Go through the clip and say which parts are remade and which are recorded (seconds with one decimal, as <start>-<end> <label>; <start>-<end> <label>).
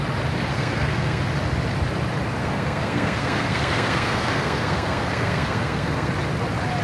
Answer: 0.0-0.5 recorded; 0.5-1.2 remade; 1.2-2.4 recorded; 2.4-6.1 remade; 6.1-6.8 recorded